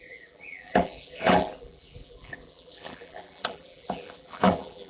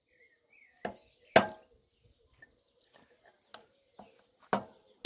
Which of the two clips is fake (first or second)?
first